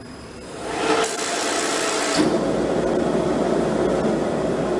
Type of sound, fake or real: real